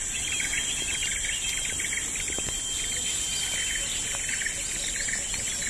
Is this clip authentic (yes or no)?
yes